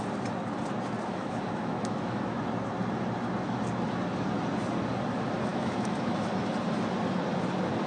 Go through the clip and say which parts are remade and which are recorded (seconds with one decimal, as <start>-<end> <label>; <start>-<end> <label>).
0.0-1.0 recorded; 1.0-2.4 remade; 2.4-5.5 recorded; 5.5-6.5 remade; 6.5-7.9 recorded